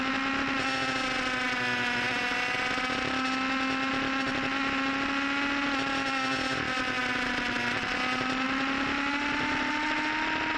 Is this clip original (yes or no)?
yes